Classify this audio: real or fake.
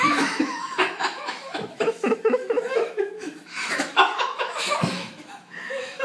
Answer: fake